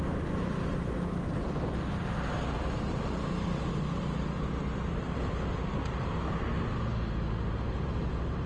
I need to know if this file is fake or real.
real